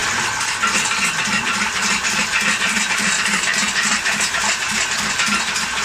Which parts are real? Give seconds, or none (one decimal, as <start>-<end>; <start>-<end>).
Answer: 0.0-2.3; 3.1-3.9; 5.1-5.8